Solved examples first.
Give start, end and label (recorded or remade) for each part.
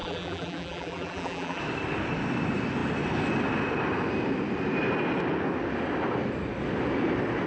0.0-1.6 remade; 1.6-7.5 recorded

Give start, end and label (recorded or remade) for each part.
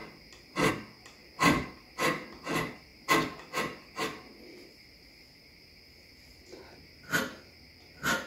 0.0-0.7 remade; 0.7-1.2 recorded; 1.2-1.7 remade; 1.7-8.3 recorded